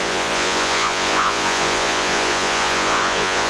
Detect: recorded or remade remade